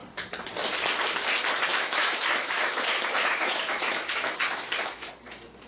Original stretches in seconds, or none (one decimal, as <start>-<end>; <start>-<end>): 0.0-1.7; 5.1-5.7